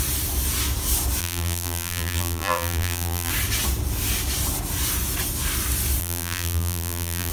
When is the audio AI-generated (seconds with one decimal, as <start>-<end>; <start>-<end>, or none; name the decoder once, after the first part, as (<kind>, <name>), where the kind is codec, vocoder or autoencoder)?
1.2-3.3 (vocoder, BigVGAN v2); 6.0-7.3